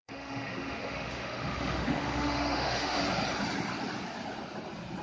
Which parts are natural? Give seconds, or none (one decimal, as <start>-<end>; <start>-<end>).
3.0-5.0